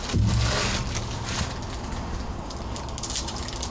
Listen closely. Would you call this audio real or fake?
real